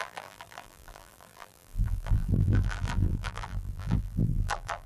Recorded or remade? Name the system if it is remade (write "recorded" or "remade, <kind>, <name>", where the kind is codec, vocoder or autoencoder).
remade, vocoder, BigVGAN v2